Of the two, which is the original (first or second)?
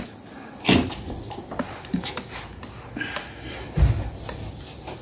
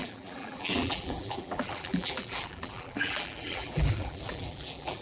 first